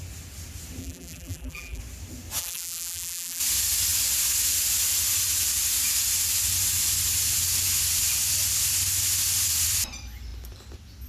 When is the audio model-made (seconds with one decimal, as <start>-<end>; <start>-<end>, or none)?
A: 0.8-1.8; 2.4-3.4